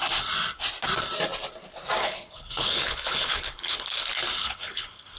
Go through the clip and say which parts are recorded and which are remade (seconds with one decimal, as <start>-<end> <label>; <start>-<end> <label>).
0.0-2.0 recorded; 2.0-4.0 remade; 4.0-4.4 recorded; 4.4-5.2 remade